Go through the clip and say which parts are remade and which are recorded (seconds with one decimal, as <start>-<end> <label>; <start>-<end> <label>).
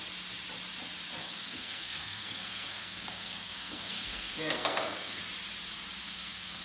0.0-1.2 recorded; 1.2-5.2 remade; 5.2-6.0 recorded; 6.0-6.6 remade